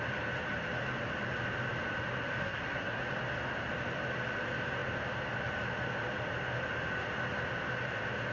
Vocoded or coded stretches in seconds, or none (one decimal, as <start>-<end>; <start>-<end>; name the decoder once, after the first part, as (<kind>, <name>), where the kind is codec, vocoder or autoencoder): 2.4-3.0 (codec, SNAC)